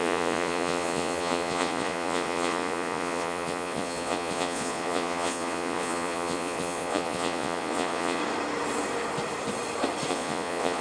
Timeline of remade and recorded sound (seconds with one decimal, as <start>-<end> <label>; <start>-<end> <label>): 0.0-8.2 remade; 8.2-10.1 recorded; 10.1-10.8 remade